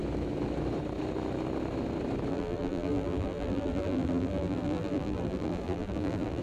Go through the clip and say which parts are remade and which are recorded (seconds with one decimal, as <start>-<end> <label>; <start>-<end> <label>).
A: 0.0-2.3 recorded; 2.3-6.4 remade